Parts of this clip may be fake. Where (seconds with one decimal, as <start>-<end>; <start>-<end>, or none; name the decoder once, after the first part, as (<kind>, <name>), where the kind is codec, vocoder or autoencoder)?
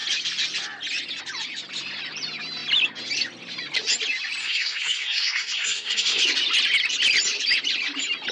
4.4-6.2 (codec, SNAC)